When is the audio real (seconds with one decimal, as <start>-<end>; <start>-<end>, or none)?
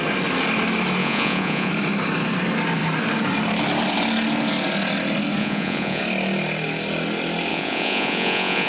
0.0-1.0; 1.7-5.4; 6.0-7.5